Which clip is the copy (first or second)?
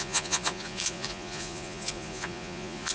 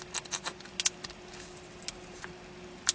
first